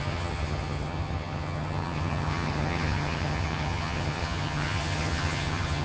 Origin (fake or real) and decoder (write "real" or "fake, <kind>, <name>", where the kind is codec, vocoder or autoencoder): fake, vocoder, HiFi-GAN